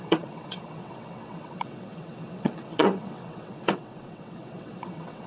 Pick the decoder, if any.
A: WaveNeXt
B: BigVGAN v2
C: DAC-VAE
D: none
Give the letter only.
A